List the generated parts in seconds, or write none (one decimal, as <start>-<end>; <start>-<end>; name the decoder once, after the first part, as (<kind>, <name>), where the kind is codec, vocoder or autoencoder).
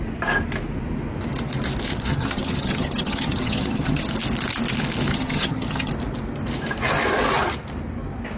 1.9-4.1 (vocoder, HiFi-GAN); 5.1-5.9